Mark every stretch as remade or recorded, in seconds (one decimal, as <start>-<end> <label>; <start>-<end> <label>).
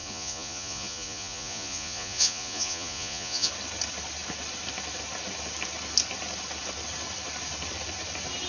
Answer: 0.0-3.5 remade; 3.5-8.5 recorded